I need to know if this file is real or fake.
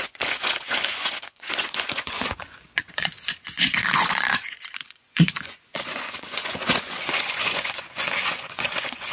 fake